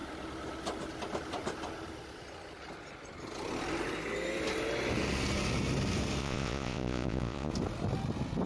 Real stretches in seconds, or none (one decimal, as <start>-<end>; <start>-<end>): 0.0-6.2; 7.5-8.5